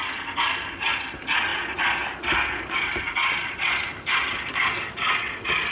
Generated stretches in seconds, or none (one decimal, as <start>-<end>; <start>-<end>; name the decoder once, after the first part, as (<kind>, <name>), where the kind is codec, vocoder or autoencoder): none

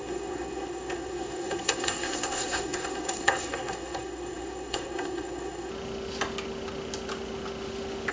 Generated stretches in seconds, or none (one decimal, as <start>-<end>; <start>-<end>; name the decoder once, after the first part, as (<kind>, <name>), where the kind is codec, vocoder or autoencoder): 0.0-5.7 (codec, SNAC)

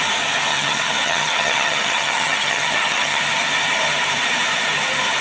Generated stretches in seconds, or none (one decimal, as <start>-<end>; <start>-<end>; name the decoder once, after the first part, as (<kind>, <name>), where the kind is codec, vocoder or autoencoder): 0.5-3.2 (vocoder, HiFi-GAN)

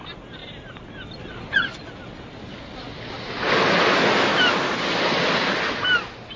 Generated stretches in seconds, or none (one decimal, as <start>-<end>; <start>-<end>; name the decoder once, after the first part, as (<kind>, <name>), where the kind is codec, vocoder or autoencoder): none

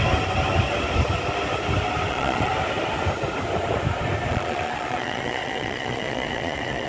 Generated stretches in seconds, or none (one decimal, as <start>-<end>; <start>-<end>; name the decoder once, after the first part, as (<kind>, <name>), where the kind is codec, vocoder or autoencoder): 2.1-2.5 (vocoder, Vocos); 4.3-6.9

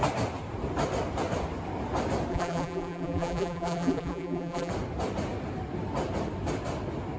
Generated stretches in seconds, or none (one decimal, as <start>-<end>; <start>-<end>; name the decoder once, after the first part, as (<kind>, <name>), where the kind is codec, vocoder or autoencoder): 2.3-4.7 (vocoder, BigVGAN v2)